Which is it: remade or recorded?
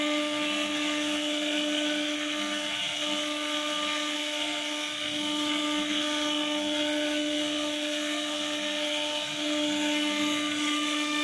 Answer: remade